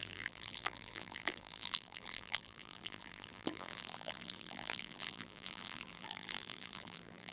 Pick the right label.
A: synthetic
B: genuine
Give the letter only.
A